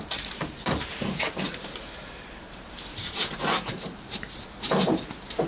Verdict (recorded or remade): remade